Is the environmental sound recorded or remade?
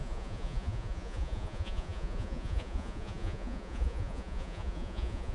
remade